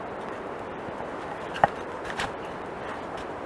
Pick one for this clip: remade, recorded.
remade